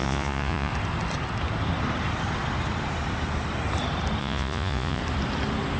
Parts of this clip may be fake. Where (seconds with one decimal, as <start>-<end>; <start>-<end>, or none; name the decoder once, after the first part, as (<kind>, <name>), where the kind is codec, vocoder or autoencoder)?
0.0-0.7 (vocoder, Vocos); 4.2-5.0